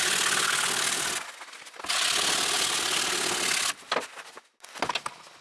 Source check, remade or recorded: recorded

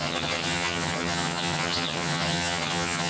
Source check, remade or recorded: remade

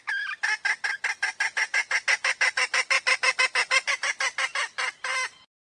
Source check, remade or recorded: recorded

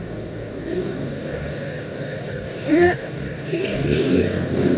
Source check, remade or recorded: remade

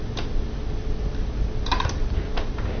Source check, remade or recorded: recorded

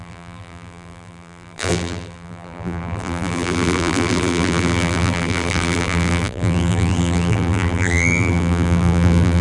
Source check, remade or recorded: remade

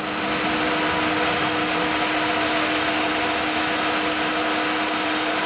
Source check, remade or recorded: recorded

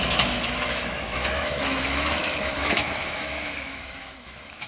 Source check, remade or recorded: remade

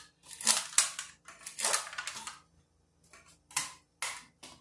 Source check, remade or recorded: recorded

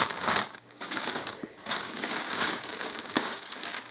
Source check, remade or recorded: remade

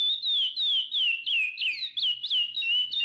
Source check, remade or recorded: recorded